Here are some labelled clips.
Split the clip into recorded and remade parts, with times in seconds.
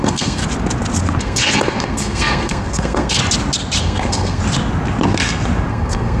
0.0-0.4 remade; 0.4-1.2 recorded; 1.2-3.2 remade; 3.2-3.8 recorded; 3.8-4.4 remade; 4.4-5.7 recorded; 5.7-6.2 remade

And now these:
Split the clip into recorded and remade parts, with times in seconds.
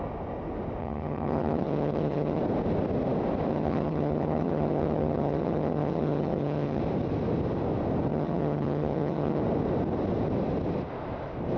0.0-0.8 recorded; 0.8-2.4 remade; 2.4-3.5 recorded; 3.5-6.8 remade; 6.8-8.1 recorded; 8.1-9.4 remade; 9.4-11.6 recorded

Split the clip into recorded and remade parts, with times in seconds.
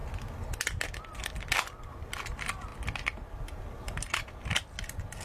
0.0-5.2 recorded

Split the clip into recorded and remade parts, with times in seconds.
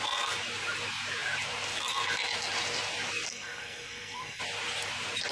0.0-3.3 recorded; 3.3-4.4 remade; 4.4-5.3 recorded